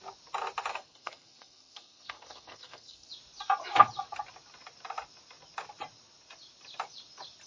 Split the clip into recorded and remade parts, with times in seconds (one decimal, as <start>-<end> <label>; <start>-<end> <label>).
0.0-0.7 recorded; 0.7-3.1 remade; 3.1-7.5 recorded